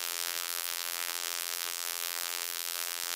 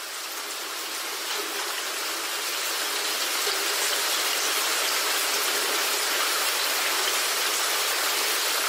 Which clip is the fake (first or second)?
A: first